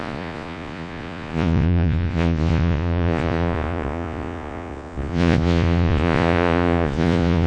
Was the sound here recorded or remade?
remade